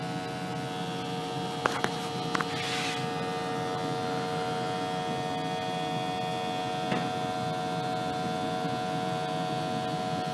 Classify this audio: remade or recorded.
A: recorded